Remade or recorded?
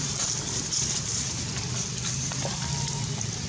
remade